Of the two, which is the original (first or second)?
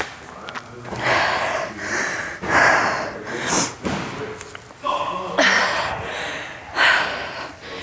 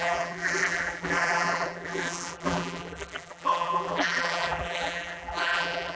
first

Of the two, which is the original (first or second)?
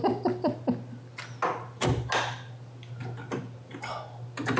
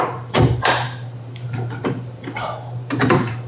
first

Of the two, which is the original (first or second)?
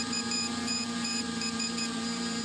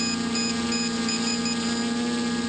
second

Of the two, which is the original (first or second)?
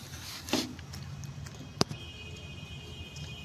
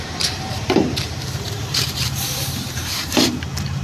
first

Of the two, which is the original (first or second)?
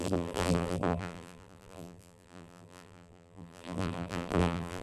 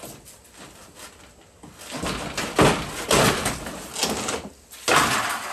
second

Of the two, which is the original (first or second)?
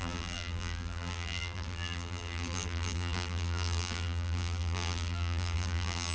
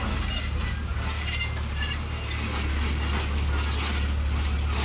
second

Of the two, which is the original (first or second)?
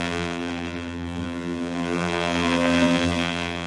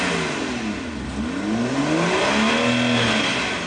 second